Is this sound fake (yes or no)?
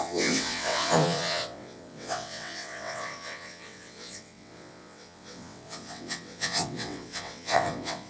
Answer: yes